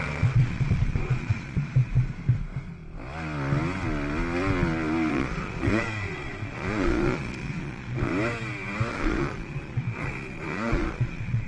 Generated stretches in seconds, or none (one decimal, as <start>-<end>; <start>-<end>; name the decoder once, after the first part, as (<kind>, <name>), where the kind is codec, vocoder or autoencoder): 0.0-1.8 (vocoder, Vocos); 5.1-8.1; 8.9-11.5